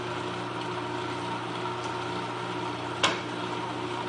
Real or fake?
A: real